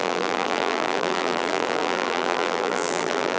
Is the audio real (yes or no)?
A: no